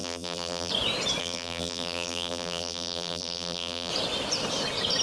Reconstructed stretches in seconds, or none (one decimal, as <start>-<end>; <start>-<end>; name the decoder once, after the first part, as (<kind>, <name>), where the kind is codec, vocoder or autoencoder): 0.0-0.7 (vocoder, BigVGAN v2); 1.2-3.9